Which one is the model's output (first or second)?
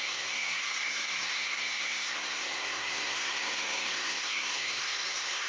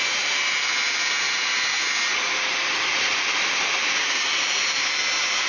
first